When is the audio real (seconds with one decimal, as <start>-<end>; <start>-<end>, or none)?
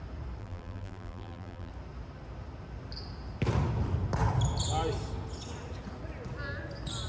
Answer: 0.0-0.4; 1.7-7.1